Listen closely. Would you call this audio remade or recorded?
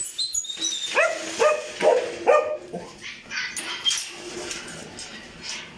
recorded